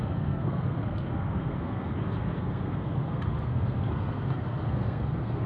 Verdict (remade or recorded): remade